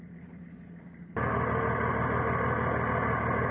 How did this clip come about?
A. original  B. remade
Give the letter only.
A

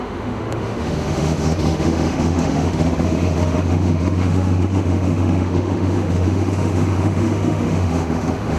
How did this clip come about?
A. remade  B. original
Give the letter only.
A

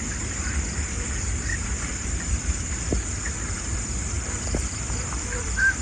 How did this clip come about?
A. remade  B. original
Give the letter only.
B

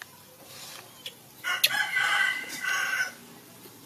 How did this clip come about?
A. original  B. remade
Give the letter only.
A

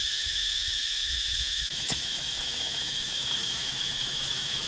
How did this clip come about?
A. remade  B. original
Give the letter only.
A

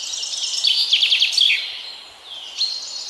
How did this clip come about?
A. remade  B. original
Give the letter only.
B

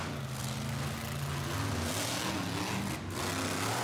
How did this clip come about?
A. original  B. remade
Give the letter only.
A